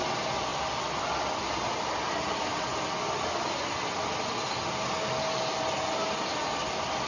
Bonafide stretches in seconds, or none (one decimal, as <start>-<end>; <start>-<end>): 0.0-7.1